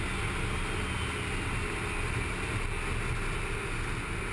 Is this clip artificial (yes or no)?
no